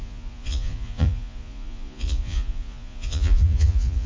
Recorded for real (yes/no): no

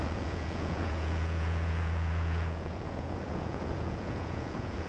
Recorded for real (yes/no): no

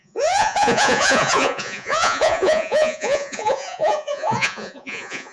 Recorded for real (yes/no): no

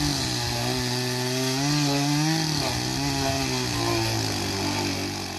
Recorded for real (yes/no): yes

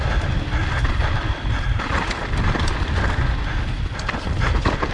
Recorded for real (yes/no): yes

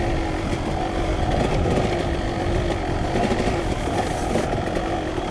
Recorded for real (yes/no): yes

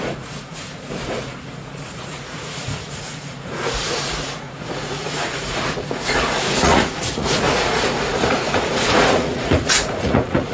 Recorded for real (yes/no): no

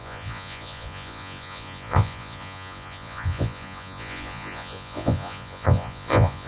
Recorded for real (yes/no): no